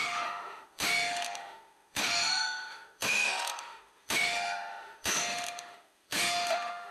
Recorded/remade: remade